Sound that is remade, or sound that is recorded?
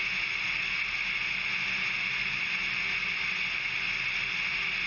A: recorded